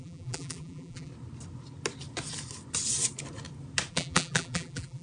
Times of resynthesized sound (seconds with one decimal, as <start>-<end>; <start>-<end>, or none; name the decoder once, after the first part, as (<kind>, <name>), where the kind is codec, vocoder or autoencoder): 0.0-1.1 (vocoder, BigVGAN v2); 3.9-5.0